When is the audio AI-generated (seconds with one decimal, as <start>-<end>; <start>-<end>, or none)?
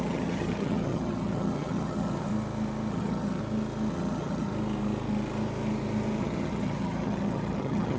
0.0-2.3; 2.9-3.4; 3.9-4.5; 6.2-8.0